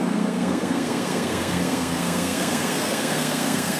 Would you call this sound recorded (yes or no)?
no